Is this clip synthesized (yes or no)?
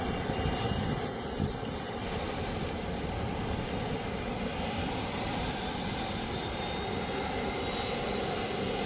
yes